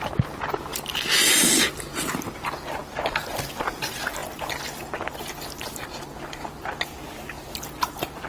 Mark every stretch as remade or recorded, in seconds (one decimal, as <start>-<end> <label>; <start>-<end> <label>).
0.0-8.3 recorded